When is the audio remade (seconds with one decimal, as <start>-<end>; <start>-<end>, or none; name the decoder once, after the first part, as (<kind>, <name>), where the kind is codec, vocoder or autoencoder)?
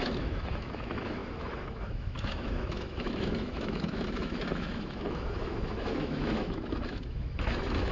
0.0-7.9 (autoencoder, DAC-VAE)